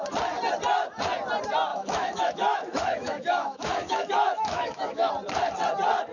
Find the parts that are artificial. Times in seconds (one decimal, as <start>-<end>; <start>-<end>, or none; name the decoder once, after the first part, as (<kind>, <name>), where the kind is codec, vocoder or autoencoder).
1.7-5.1 (autoencoder, DAC-VAE)